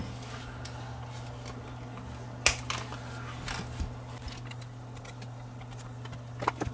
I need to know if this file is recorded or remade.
recorded